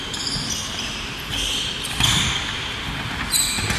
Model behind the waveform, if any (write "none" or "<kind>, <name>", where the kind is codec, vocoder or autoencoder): none